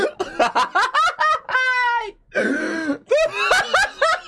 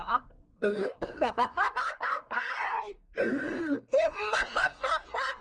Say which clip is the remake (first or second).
second